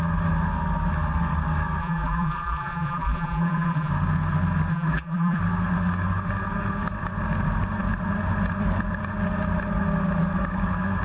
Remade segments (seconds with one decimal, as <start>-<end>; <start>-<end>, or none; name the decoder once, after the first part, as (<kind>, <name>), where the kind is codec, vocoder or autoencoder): 1.8-3.9 (vocoder, BigVGAN v2); 4.7-5.4